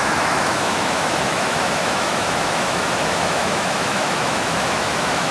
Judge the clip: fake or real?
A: fake